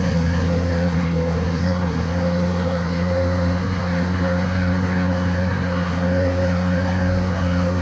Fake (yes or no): yes